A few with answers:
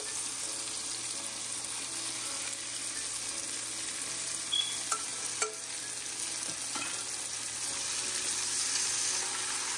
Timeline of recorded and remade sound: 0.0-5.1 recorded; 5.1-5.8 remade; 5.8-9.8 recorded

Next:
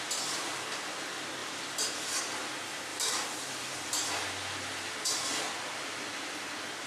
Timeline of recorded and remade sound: 0.0-1.4 recorded; 1.4-2.2 remade; 2.2-2.9 recorded; 2.9-4.1 remade; 4.1-6.9 recorded

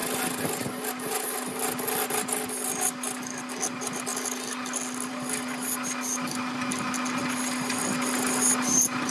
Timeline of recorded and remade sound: 0.0-9.1 recorded

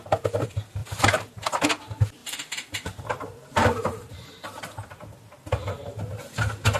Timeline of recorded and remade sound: 0.0-0.8 recorded; 0.8-1.3 remade; 1.3-2.2 recorded; 2.2-4.6 remade; 4.6-6.8 recorded

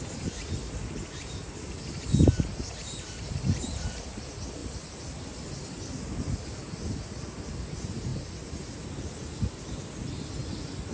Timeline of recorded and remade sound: 0.0-4.6 recorded; 4.6-7.0 remade; 7.0-8.1 recorded; 8.1-8.8 remade; 8.8-10.9 recorded

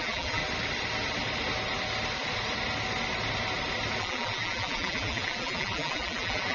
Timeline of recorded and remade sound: 0.0-0.4 remade; 0.4-4.0 recorded; 4.0-6.5 remade